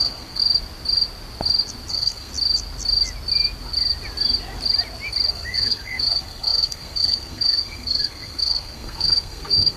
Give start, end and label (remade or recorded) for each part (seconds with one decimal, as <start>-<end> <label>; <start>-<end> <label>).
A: 0.0-0.4 remade; 0.4-1.9 recorded; 1.9-2.3 remade; 2.3-5.3 recorded; 5.3-9.8 remade